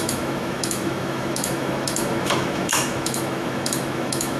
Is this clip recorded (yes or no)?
no